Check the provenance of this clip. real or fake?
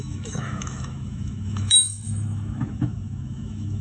fake